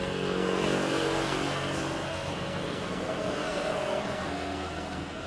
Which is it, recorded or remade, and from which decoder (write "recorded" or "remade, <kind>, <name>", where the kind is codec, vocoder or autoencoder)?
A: remade, codec, SNAC